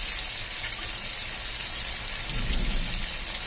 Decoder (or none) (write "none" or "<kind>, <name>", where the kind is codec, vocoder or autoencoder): none